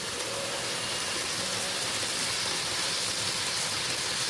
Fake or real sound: real